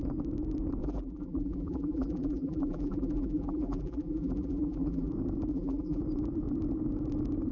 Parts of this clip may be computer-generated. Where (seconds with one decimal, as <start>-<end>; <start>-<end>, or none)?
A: 0.8-5.1; 5.5-6.0